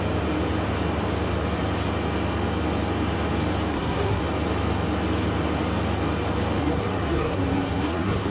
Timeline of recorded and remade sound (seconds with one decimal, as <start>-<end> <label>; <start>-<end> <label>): 0.0-3.7 recorded; 3.7-4.2 remade; 4.2-6.6 recorded; 6.6-8.3 remade